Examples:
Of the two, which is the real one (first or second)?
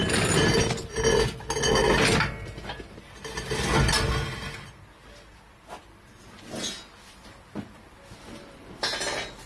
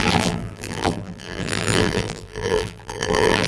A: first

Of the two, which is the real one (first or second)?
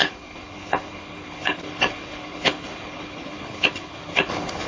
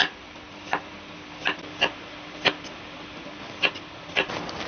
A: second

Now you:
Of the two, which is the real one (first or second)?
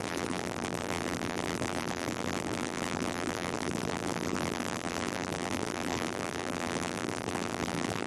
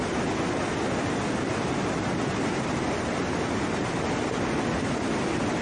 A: second